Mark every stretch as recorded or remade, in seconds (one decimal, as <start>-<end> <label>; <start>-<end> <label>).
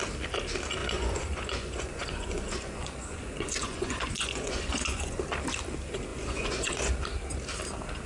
0.0-0.8 recorded; 0.8-5.2 remade; 5.2-6.1 recorded; 6.1-6.9 remade; 6.9-8.1 recorded